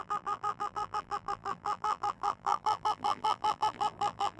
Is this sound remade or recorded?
remade